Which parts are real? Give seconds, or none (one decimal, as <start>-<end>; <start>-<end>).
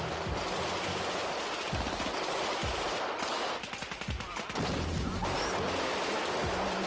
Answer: 0.0-6.9